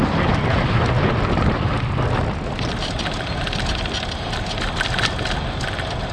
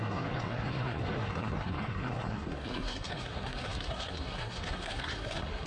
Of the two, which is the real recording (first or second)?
first